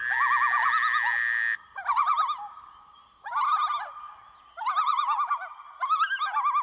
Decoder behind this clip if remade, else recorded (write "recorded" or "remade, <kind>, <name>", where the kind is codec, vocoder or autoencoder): recorded